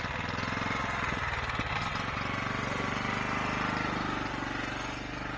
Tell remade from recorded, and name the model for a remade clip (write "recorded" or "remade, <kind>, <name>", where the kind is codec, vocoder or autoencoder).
recorded